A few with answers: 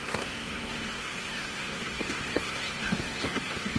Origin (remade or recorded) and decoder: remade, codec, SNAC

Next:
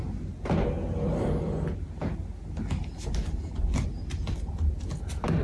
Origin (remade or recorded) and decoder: recorded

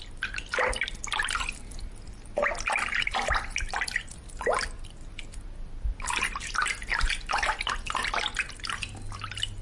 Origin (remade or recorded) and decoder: recorded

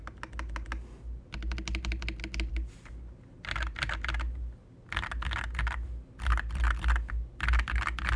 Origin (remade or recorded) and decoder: recorded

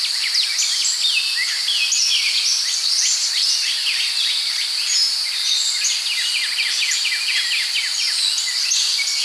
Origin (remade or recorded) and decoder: recorded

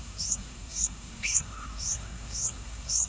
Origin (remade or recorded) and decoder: remade, codec, SNAC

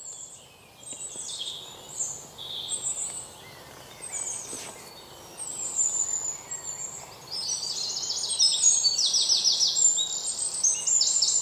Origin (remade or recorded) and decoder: recorded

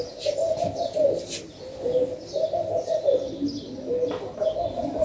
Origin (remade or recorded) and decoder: recorded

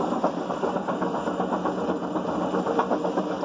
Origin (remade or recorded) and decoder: recorded